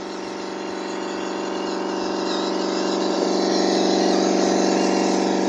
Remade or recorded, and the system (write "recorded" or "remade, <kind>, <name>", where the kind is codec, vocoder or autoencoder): recorded